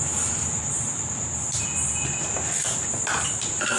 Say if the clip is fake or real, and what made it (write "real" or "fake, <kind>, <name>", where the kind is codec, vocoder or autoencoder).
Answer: real